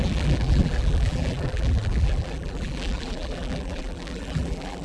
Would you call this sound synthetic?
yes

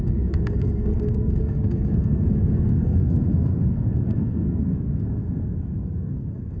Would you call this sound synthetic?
yes